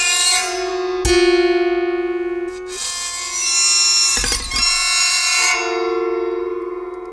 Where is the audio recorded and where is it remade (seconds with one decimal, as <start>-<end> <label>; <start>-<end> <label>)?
0.0-0.7 remade; 0.7-5.0 recorded; 5.0-5.6 remade; 5.6-6.4 recorded; 6.4-7.1 remade